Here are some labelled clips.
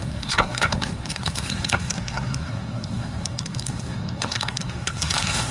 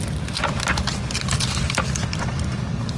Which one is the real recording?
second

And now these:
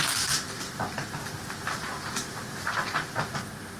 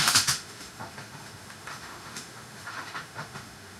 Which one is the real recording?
first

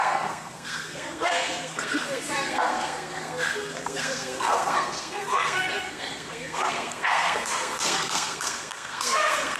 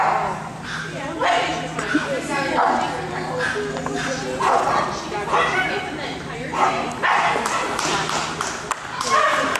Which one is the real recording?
second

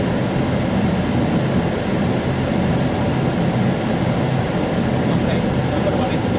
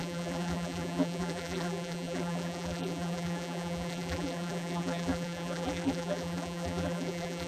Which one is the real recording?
first